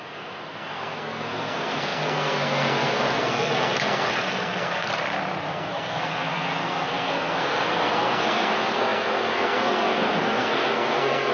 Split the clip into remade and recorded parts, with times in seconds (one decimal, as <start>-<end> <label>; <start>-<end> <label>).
0.0-4.9 remade; 4.9-5.5 recorded; 5.5-11.3 remade